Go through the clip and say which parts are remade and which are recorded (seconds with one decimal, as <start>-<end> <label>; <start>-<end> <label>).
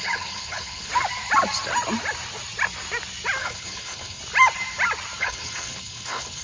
0.0-0.9 remade; 0.9-3.4 recorded; 3.4-4.2 remade; 4.2-5.2 recorded; 5.2-6.4 remade